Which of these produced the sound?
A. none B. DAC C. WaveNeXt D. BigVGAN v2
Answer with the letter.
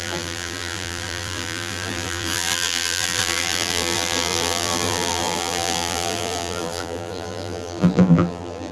D